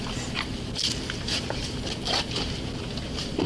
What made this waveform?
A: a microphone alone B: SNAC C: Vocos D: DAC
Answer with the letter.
A